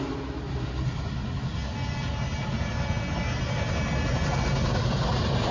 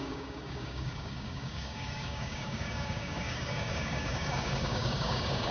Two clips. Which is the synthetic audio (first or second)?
second